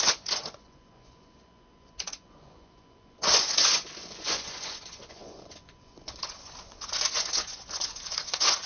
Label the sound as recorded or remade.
remade